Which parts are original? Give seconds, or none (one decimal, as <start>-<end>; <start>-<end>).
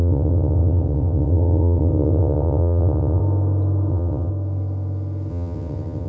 3.2-3.9; 4.3-5.3